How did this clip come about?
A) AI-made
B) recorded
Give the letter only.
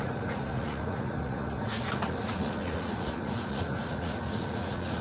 A